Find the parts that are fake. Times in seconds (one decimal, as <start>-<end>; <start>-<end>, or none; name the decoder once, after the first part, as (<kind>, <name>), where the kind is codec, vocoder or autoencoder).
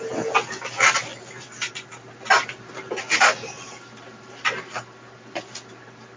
none